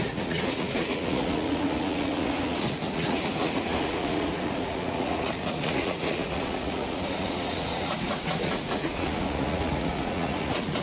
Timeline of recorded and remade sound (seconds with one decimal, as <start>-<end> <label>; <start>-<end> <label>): 0.0-10.8 remade